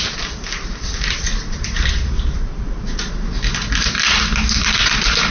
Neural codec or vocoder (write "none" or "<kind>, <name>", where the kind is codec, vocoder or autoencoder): none